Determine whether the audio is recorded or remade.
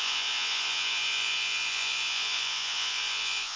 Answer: remade